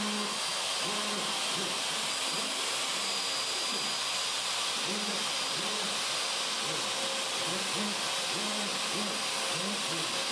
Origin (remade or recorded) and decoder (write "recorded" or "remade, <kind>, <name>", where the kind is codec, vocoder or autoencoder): recorded